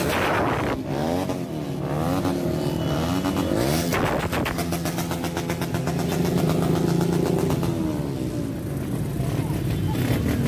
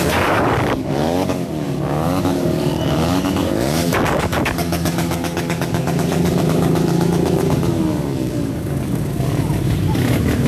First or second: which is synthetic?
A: second